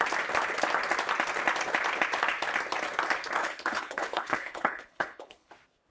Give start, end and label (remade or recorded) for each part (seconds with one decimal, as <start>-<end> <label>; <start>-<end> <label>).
0.0-3.4 recorded; 3.4-5.5 remade; 5.5-5.9 recorded